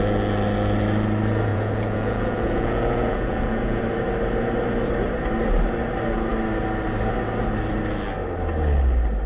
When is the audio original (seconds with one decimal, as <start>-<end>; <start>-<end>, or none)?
0.0-1.5; 3.8-9.3